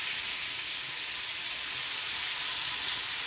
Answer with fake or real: real